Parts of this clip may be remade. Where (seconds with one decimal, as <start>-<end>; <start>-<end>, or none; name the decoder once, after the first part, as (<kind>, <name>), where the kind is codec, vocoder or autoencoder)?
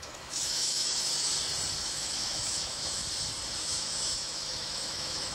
0.0-1.3 (autoencoder, DAC-VAE); 1.8-3.0; 3.6-5.3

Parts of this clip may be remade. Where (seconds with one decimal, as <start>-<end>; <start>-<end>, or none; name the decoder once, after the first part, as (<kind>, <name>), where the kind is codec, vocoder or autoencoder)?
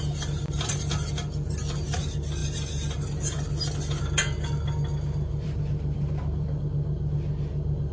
5.3-6.6 (vocoder, BigVGAN v2)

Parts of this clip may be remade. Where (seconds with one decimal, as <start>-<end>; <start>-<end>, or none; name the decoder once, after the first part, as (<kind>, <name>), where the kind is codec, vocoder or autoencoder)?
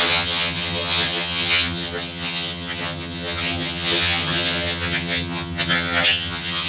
0.0-6.7 (vocoder, HiFi-GAN)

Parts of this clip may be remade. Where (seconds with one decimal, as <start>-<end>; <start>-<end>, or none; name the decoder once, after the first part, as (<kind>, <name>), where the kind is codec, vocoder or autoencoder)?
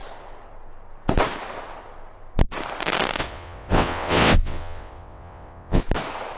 3.2-5.8 (vocoder, WaveNeXt)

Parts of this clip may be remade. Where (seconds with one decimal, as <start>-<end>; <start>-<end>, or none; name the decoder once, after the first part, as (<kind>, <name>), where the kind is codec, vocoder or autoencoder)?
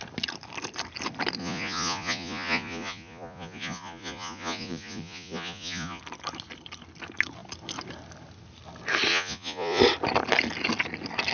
1.4-6.0 (vocoder, Vocos); 9.1-9.8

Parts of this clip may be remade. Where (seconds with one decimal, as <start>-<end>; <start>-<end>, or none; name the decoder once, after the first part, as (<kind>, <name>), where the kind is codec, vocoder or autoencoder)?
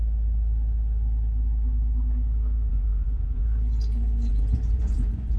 2.7-3.4 (vocoder, Vocos); 4.3-5.4